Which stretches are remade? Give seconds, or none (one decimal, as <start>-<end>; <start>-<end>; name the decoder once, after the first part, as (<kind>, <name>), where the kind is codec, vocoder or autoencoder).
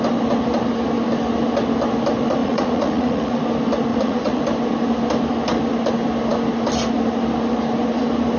2.4-3.4 (vocoder, Vocos); 3.9-4.4